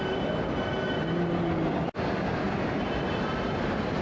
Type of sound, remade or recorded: recorded